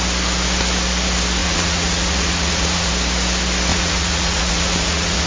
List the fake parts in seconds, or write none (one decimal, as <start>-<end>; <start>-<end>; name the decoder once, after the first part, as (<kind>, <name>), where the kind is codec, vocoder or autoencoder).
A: 1.4-2.9 (vocoder, Vocos); 3.7-5.3